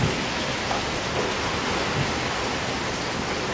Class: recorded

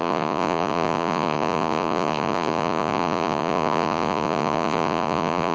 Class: remade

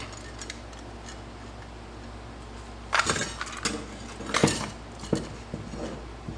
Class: recorded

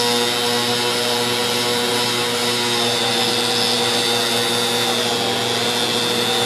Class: recorded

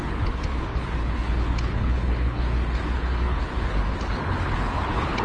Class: remade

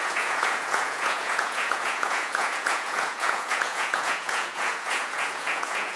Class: remade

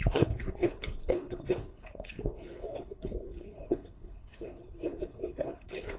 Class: remade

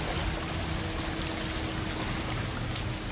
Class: recorded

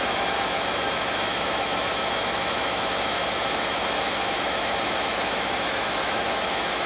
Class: remade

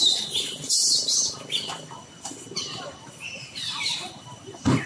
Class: remade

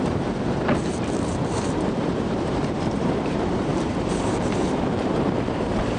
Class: remade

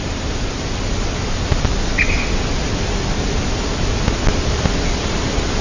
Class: recorded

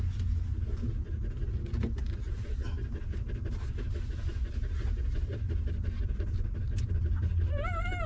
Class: recorded